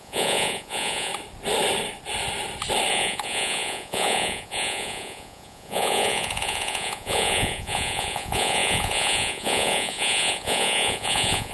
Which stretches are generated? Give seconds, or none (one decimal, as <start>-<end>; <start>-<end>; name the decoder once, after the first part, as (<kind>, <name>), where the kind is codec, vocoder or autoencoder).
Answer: 0.0-1.1 (vocoder, Vocos); 2.9-11.5